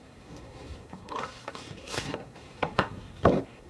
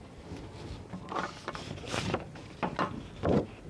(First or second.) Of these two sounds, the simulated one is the first